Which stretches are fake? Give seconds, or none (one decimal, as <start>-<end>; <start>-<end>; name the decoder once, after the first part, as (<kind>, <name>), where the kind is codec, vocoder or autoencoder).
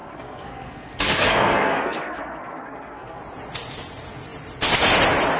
0.0-3.2 (codec, SNAC)